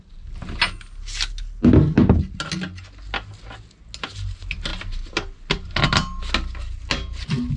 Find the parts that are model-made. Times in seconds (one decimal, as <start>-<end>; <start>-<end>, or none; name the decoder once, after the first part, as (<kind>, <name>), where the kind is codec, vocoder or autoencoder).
none

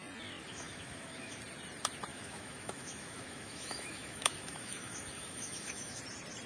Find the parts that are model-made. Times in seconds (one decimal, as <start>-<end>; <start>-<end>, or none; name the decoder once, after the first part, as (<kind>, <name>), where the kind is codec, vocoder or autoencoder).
0.4-1.4 (autoencoder, DAC-VAE); 2.1-6.0

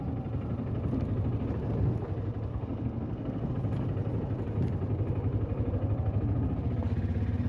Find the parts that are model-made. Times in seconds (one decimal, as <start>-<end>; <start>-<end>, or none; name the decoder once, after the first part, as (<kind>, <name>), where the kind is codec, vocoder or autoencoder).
2.5-3.5 (codec, SNAC)

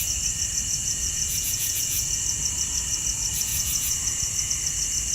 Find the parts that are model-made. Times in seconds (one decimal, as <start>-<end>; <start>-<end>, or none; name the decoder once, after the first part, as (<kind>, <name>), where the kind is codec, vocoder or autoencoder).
0.8-2.0 (vocoder, Vocos); 3.5-4.5

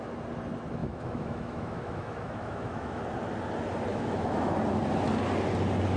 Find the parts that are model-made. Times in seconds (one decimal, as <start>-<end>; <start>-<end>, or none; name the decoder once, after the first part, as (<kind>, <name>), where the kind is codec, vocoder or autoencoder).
0.8-3.0 (autoencoder, DAC-VAE); 3.9-4.5

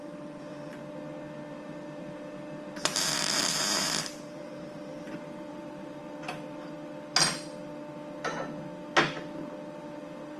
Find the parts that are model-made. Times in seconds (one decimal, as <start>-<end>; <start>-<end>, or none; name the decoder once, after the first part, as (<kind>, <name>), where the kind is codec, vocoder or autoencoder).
0.0-0.8 (vocoder, BigVGAN v2); 1.5-6.0; 9.8-10.4